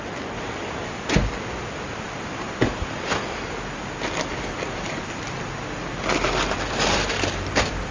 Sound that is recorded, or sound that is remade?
recorded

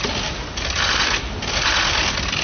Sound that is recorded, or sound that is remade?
recorded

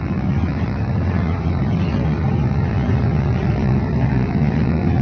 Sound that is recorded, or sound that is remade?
remade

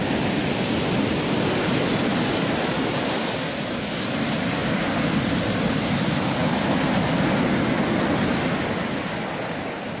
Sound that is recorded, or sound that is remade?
recorded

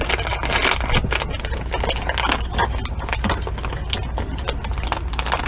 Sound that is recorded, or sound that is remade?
recorded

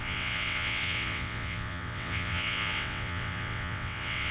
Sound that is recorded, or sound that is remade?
remade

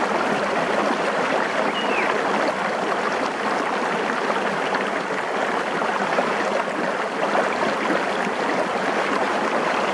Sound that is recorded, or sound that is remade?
recorded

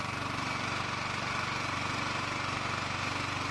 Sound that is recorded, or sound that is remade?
recorded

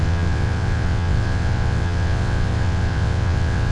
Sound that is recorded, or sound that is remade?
remade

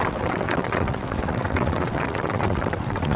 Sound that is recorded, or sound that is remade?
remade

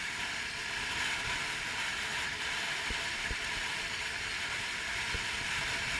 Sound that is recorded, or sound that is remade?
recorded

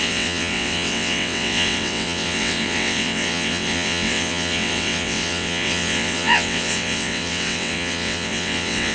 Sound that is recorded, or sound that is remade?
remade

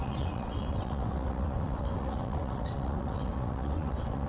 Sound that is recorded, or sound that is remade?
remade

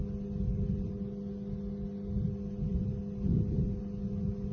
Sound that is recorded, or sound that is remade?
recorded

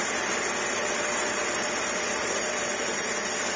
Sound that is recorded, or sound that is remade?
recorded